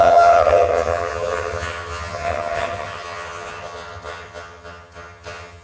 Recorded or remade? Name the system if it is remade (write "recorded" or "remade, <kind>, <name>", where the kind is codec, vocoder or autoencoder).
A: remade, vocoder, HiFi-GAN